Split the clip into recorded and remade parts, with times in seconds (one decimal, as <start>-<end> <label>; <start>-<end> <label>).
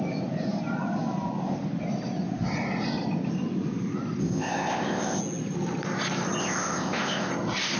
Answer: 0.0-4.2 recorded; 4.2-5.2 remade; 5.2-6.4 recorded; 6.4-7.3 remade; 7.3-7.8 recorded